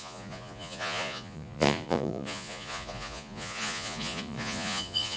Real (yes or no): no